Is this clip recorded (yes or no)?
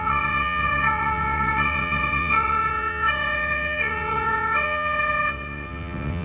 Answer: no